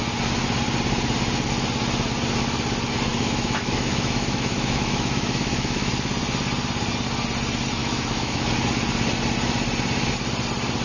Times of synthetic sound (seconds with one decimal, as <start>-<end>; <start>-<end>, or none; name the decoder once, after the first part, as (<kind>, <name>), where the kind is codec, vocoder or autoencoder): 3.1-5.9 (autoencoder, DAC-VAE); 7.8-8.5